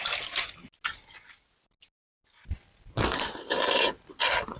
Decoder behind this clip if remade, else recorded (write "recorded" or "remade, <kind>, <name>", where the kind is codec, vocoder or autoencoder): recorded